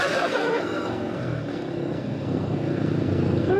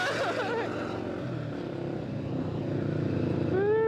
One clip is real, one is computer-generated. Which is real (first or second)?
second